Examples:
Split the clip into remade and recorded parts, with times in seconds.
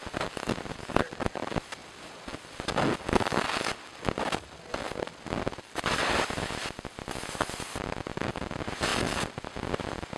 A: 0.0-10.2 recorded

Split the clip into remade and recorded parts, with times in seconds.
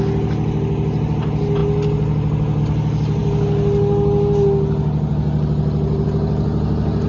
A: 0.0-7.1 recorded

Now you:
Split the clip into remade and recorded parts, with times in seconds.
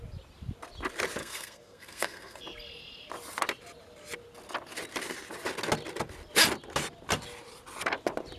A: 0.0-1.2 recorded; 1.2-2.4 remade; 2.4-8.4 recorded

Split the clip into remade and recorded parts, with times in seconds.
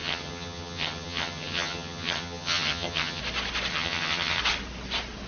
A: 0.0-3.2 remade; 3.2-3.7 recorded; 3.7-4.4 remade; 4.4-5.3 recorded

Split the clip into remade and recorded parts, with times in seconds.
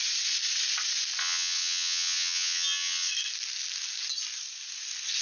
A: 0.0-1.2 recorded; 1.2-3.1 remade; 3.1-5.2 recorded